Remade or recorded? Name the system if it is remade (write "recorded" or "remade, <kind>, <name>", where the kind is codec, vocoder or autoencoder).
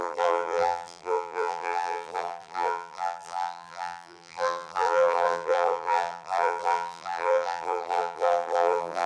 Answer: remade, vocoder, BigVGAN v2